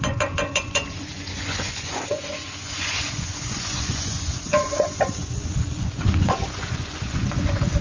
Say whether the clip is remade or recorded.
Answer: remade